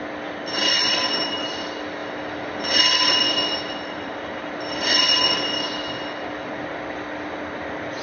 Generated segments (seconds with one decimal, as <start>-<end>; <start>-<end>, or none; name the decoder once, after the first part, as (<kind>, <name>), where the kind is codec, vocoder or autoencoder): none